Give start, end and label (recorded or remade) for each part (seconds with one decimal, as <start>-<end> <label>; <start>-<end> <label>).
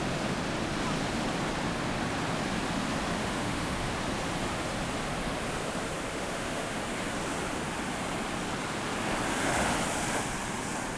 0.0-3.2 recorded; 3.2-3.9 remade; 3.9-6.1 recorded; 6.1-6.8 remade; 6.8-11.0 recorded